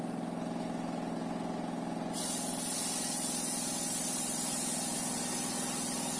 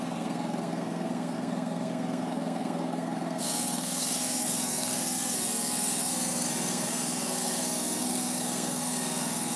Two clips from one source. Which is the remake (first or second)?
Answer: second